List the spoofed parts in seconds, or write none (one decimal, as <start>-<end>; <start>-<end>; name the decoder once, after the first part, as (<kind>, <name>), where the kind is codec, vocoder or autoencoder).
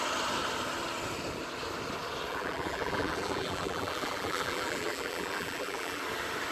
2.3-6.0 (vocoder, BigVGAN v2)